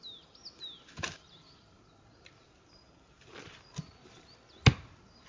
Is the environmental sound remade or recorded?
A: recorded